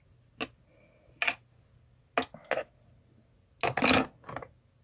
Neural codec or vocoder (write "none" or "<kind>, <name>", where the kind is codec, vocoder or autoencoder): none